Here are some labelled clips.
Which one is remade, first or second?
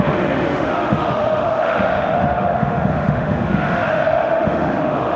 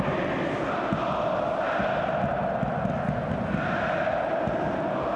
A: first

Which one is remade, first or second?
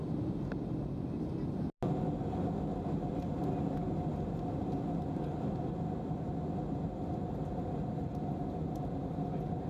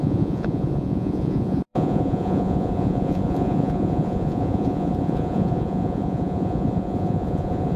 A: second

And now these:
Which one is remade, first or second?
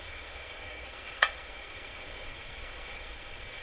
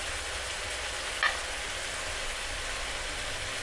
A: first